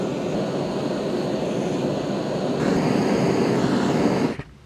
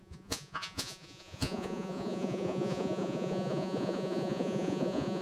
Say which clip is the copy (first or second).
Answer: second